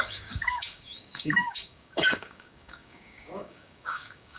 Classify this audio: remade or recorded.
remade